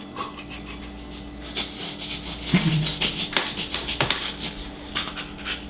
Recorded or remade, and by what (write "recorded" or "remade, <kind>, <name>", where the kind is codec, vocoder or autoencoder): recorded